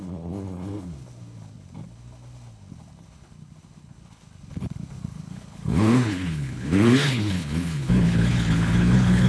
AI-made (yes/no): yes